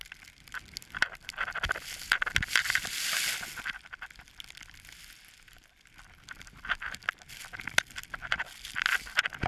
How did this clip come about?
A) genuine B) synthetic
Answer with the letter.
A